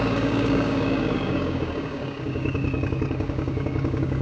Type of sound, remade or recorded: remade